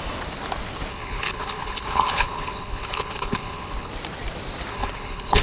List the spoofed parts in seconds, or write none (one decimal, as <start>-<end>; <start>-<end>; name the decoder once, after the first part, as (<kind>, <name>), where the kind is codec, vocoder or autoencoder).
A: 0.9-3.9 (codec, HILCodec); 4.7-5.4